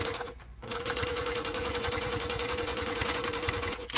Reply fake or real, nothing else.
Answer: fake